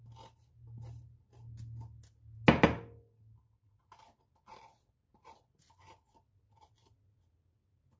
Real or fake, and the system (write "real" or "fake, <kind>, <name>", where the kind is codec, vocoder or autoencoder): real